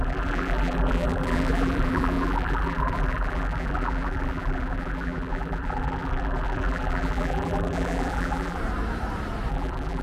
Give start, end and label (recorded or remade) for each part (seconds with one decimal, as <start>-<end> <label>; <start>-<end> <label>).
0.0-8.6 remade; 8.6-9.5 recorded; 9.5-10.0 remade